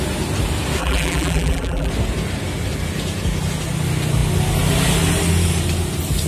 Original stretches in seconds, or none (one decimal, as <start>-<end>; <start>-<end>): 0.0-0.8; 1.9-6.3